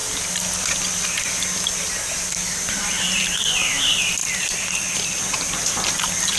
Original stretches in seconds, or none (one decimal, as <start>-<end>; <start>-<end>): 0.0-6.4

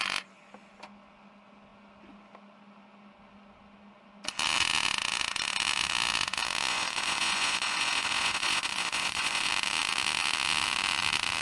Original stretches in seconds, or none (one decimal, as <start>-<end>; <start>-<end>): 0.0-6.7; 9.5-11.4

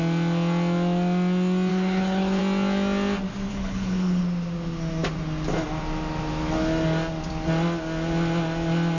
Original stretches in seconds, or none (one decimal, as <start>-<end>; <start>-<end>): 0.0-1.7; 2.4-3.5; 4.2-9.0

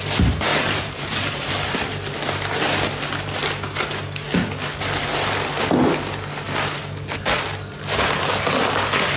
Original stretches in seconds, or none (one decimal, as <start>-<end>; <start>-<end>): 0.0-0.5; 1.5-9.2

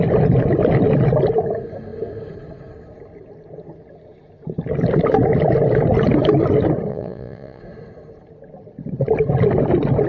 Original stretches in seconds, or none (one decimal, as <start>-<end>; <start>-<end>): 0.0-6.9; 7.6-10.1

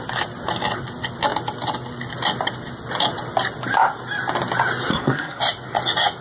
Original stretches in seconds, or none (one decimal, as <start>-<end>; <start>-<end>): 0.0-4.9; 5.4-6.2